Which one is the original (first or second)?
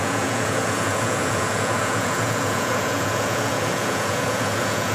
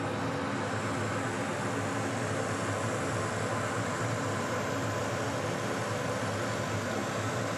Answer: second